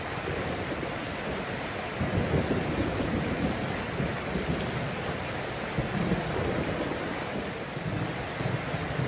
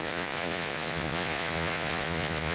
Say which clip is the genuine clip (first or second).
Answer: first